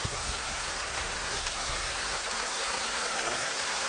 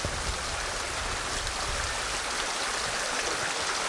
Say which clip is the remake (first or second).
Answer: first